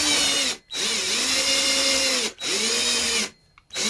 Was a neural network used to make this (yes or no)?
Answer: no